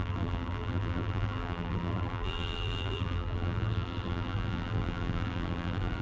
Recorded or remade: remade